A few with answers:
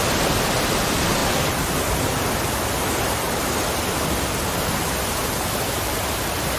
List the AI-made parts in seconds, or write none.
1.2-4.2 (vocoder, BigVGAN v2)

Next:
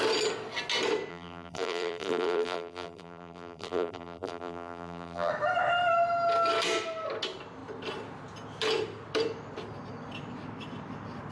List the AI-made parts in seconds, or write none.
1.1-5.3 (vocoder, BigVGAN v2)